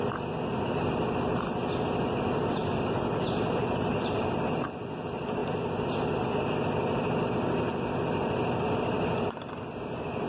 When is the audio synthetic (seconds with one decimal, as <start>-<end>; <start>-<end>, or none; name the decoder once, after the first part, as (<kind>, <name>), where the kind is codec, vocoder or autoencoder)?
2.6-4.2 (vocoder, BigVGAN v2)